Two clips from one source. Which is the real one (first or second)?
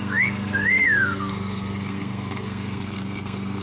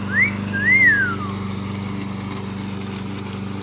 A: second